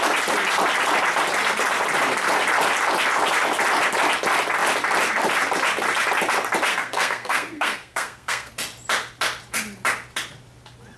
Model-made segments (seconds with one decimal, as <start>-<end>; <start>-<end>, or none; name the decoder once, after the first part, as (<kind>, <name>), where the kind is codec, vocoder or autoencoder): 6.7-8.5 (codec, SNAC)